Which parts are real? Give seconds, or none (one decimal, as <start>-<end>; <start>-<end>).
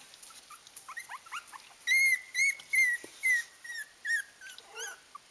0.0-5.3